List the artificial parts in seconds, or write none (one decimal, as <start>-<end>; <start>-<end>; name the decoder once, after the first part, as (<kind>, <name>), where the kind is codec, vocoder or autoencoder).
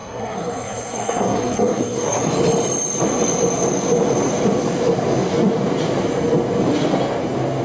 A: 0.0-2.2 (codec, SNAC)